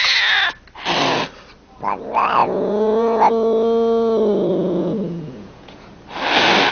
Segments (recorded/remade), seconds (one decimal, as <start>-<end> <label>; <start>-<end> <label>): 0.0-2.4 recorded; 2.4-3.3 remade; 3.3-4.5 recorded; 4.5-5.9 remade; 5.9-6.7 recorded